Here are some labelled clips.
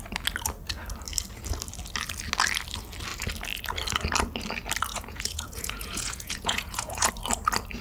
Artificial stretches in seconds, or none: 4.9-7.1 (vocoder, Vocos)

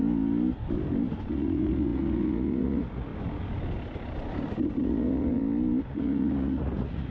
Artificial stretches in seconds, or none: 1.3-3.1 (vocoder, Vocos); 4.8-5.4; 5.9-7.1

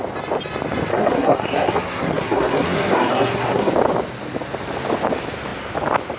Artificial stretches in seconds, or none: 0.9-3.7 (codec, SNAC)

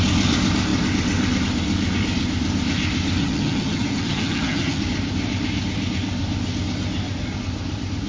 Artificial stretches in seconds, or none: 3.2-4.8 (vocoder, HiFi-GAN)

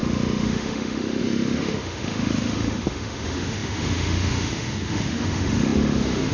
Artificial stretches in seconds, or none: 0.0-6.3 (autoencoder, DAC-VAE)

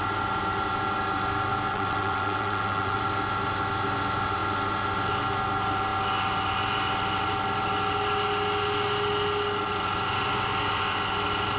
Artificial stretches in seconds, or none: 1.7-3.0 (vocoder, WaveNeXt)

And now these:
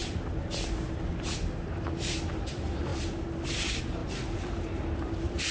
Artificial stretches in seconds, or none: 1.1-2.9 (vocoder, BigVGAN v2); 3.5-5.5